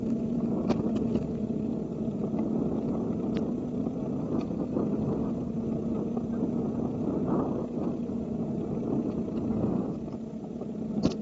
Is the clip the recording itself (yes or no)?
yes